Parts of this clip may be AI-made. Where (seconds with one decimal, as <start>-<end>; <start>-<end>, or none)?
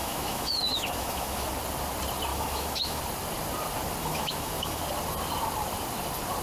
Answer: 0.0-1.5; 2.3-3.0; 4.0-4.8